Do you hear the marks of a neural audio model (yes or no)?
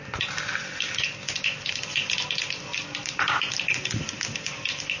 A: no